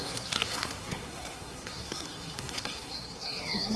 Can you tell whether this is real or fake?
fake